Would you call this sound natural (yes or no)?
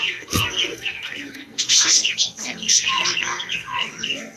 no